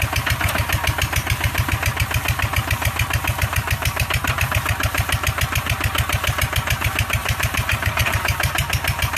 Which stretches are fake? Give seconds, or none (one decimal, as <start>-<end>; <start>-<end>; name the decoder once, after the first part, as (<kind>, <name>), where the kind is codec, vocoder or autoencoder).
7.2-8.0 (vocoder, BigVGAN v2)